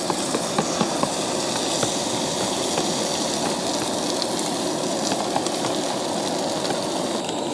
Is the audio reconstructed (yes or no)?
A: no